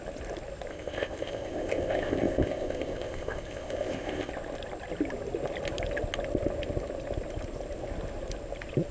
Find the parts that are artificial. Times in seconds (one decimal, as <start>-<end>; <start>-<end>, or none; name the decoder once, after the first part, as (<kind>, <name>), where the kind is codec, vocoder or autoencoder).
0.7-4.3 (codec, ZipCodec)